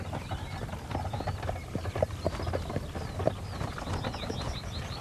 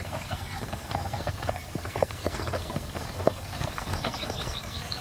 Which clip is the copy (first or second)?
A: second